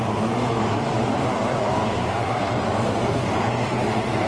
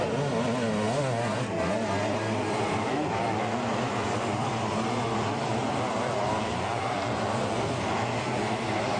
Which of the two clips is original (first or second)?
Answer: second